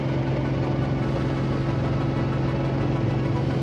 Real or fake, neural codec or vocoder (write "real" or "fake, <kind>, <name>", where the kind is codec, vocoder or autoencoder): real